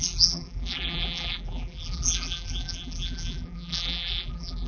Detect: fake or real fake